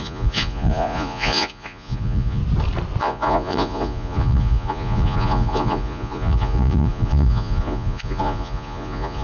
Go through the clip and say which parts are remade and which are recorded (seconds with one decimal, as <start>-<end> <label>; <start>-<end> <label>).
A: 0.0-2.4 remade; 2.4-3.0 recorded; 3.0-9.2 remade